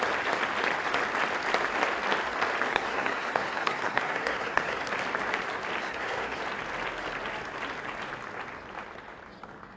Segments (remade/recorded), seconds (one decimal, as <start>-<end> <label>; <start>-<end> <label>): 0.0-2.7 recorded; 2.7-4.8 remade; 4.8-5.8 recorded; 5.8-6.4 remade; 6.4-9.8 recorded